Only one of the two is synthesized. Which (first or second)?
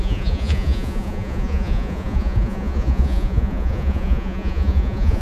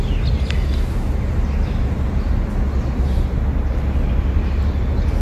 first